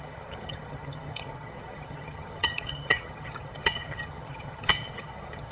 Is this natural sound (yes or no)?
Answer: no